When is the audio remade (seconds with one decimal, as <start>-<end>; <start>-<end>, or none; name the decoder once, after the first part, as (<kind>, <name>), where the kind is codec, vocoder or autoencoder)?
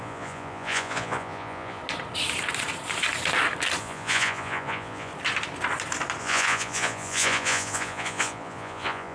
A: 0.0-1.8 (vocoder, Vocos); 3.8-5.1; 6.2-9.1